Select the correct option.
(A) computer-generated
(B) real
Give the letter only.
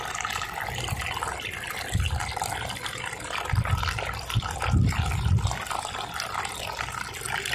B